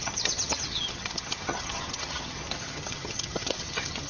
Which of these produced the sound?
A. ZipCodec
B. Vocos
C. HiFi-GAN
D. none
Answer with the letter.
C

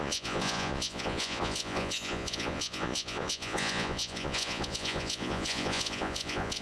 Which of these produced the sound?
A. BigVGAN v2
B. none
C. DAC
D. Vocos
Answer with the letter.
D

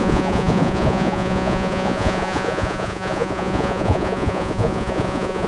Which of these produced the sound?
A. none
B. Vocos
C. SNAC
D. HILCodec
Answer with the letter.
B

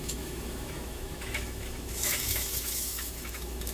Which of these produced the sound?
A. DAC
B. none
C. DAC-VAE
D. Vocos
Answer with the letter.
C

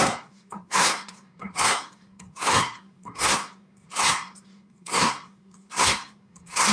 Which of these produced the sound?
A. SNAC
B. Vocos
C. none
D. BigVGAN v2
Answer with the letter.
A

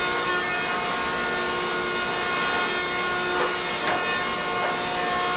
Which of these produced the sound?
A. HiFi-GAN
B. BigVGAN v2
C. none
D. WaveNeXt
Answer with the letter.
C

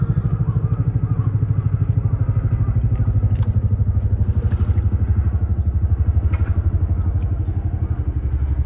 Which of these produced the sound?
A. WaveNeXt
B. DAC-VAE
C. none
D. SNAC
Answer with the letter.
C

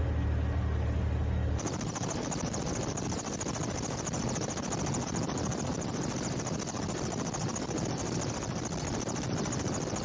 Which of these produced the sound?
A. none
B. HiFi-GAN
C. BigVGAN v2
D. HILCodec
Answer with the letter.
A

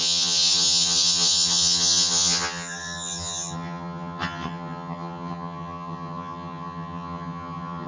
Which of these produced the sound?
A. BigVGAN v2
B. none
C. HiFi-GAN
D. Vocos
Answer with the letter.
C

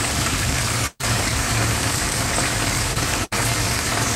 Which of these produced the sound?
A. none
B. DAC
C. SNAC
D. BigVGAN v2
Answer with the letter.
B